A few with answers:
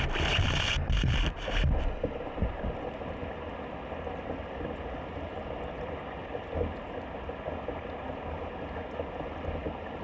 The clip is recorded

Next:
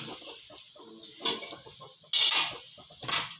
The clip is recorded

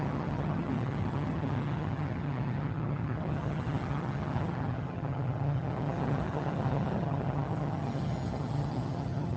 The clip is remade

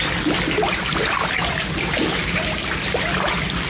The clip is recorded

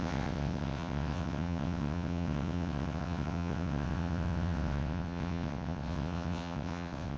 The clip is remade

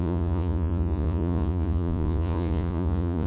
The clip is remade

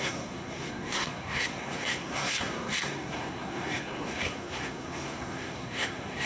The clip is remade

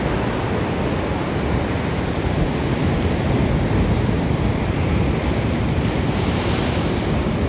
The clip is recorded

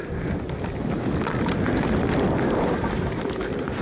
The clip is recorded